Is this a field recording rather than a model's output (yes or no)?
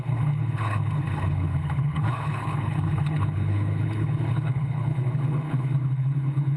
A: no